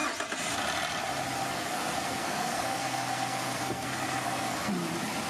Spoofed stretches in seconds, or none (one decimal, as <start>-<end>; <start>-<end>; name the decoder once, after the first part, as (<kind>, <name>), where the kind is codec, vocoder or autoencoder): 1.5-4.7 (codec, SNAC)